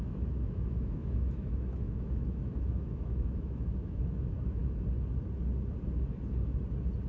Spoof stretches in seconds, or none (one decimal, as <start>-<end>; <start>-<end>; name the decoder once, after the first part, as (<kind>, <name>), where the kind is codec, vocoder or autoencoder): 0.0-4.6 (autoencoder, DAC-VAE)